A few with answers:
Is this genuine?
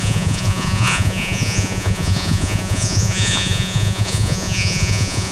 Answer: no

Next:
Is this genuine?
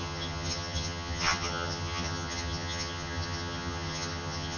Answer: no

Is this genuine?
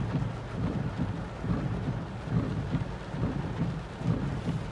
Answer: yes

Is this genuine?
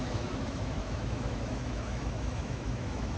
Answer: no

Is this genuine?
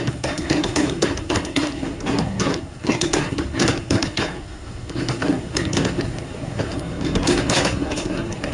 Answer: no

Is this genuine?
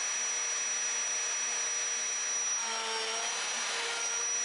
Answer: yes